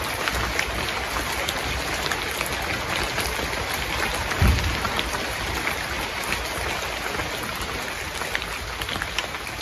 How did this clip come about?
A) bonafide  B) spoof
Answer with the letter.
A